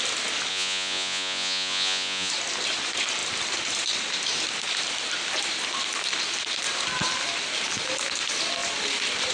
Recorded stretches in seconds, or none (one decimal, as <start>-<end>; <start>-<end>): 0.0-0.5; 2.3-9.3